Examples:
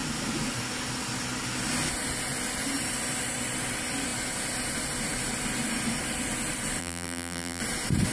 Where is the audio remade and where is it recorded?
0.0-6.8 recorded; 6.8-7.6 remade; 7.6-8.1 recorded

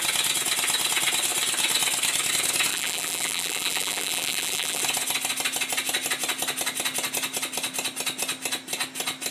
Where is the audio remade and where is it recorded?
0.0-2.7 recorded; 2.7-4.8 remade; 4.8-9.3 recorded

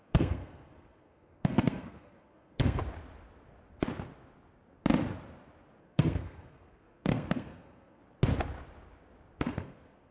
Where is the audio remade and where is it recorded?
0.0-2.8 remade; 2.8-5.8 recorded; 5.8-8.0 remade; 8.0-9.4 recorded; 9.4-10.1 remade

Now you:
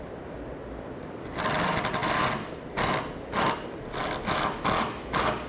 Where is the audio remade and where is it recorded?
0.0-5.5 recorded

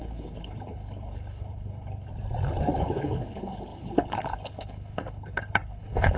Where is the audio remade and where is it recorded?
0.0-2.1 remade; 2.1-2.8 recorded; 2.8-6.2 remade